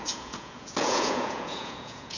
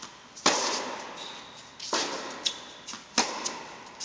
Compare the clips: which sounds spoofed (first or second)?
first